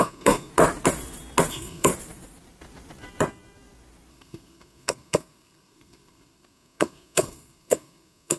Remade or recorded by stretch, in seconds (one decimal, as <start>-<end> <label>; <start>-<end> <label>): 0.0-0.5 remade; 0.5-1.5 recorded; 1.5-1.9 remade; 1.9-4.1 recorded; 4.1-8.4 remade